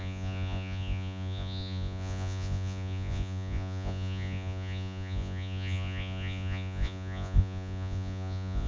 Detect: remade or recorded remade